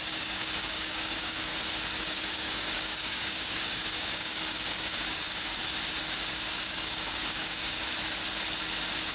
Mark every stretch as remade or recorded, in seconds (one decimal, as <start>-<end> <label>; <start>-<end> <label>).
0.0-1.5 remade; 1.5-2.0 recorded; 2.0-5.6 remade; 5.6-6.3 recorded; 6.3-7.8 remade; 7.8-9.1 recorded